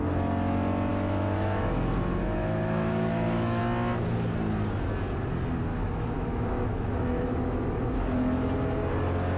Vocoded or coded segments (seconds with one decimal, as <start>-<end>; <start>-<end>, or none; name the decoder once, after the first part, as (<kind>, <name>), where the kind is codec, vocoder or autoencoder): 0.9-3.6 (autoencoder, DAC-VAE); 5.7-7.9